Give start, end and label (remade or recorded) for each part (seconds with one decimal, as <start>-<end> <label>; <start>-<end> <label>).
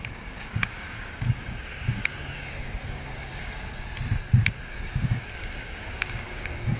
0.0-3.7 remade; 3.7-4.7 recorded; 4.7-6.8 remade